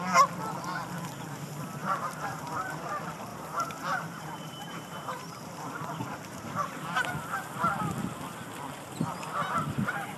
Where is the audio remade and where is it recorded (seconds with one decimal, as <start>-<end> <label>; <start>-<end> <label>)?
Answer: 0.0-1.8 recorded; 1.8-2.9 remade; 2.9-3.3 recorded; 3.3-7.1 remade; 7.1-10.2 recorded